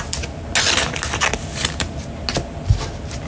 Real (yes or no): yes